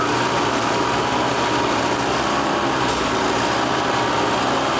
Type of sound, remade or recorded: recorded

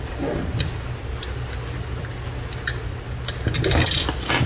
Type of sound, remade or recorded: recorded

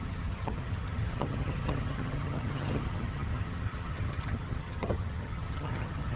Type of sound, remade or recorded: remade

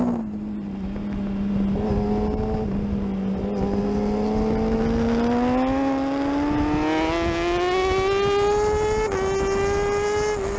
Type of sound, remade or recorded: recorded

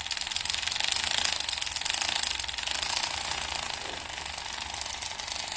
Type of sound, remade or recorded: recorded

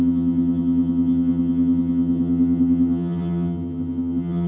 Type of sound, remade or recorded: remade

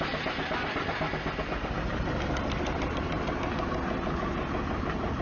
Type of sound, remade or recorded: recorded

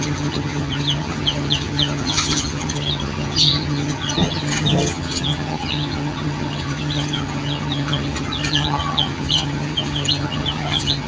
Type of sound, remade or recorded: remade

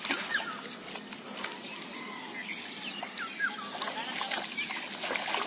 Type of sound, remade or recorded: recorded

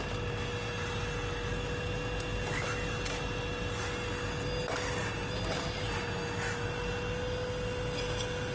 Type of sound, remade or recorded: recorded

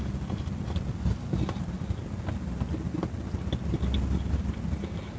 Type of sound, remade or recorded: recorded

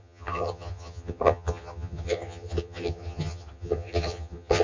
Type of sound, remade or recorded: remade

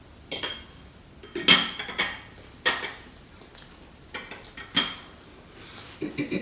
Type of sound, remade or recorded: recorded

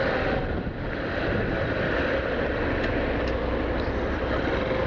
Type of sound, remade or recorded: recorded